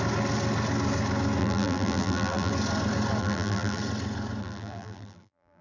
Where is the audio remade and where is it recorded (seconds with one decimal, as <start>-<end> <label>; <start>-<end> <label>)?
0.0-1.4 recorded; 1.4-2.5 remade; 2.5-3.2 recorded; 3.2-3.8 remade; 3.8-4.4 recorded; 4.4-5.6 remade